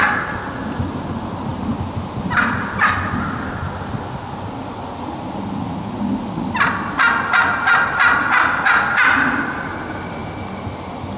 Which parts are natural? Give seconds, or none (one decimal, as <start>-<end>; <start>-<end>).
0.0-1.5; 2.3-11.2

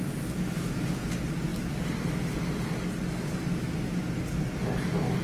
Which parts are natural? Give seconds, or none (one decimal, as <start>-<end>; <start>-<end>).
0.6-5.2

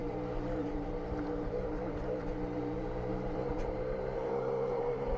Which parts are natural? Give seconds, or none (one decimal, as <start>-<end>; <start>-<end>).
none

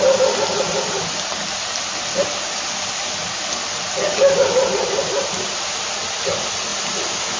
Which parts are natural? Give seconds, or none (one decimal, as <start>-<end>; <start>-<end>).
0.0-5.0; 6.1-7.4

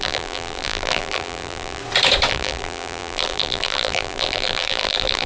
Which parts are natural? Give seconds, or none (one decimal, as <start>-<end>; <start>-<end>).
1.8-2.3

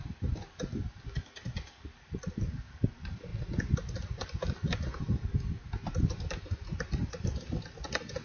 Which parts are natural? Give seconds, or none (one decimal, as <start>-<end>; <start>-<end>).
none